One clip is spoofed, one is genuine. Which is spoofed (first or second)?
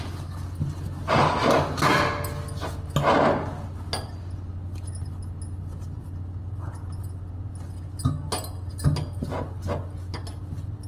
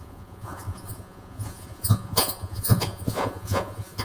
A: second